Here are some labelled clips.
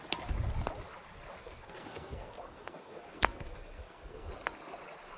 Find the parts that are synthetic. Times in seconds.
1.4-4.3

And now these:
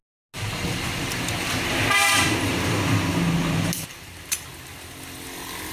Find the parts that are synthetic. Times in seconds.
2.5-4.5

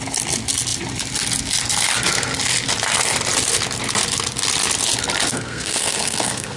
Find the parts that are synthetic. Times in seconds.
5.3-6.6

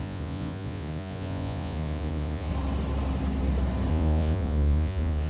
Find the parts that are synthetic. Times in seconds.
0.0-2.5; 3.9-5.3

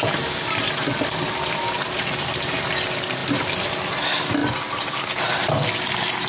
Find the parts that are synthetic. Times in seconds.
none

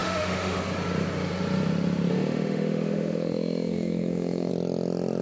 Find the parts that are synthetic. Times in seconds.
0.0-0.6; 2.1-4.5

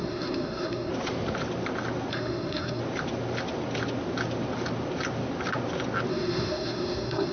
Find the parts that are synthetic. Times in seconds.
0.0-0.9; 2.1-2.8; 6.1-7.3

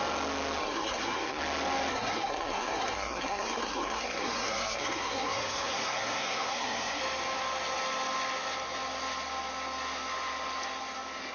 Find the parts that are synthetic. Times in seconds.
0.6-1.4; 1.9-7.0